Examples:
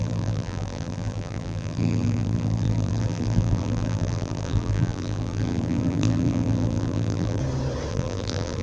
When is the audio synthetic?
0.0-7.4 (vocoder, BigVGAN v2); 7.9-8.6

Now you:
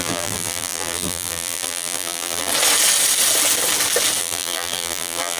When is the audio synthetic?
0.0-2.5 (vocoder, BigVGAN v2); 4.2-5.4

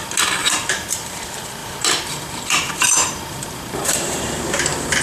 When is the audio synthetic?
0.4-1.2 (vocoder, BigVGAN v2); 1.6-4.6

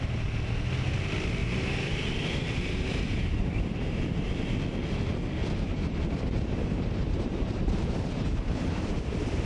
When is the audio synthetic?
1.4-4.6 (vocoder, BigVGAN v2); 5.4-9.0

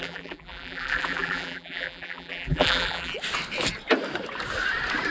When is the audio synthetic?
0.0-3.1 (vocoder, BigVGAN v2)